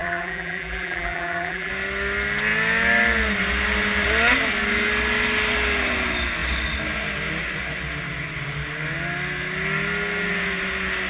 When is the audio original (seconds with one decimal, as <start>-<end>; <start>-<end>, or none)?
1.7-11.1